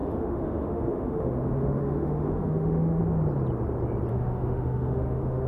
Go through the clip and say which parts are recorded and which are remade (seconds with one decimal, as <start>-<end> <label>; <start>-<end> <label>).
0.0-3.0 remade; 3.0-4.1 recorded; 4.1-5.5 remade